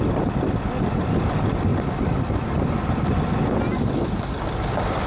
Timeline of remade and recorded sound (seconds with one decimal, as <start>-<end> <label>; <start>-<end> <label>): 0.0-5.1 recorded